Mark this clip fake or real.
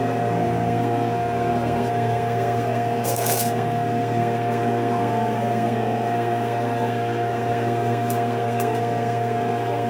fake